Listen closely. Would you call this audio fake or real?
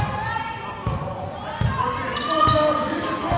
real